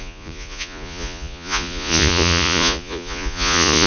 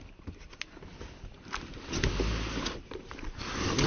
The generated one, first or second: first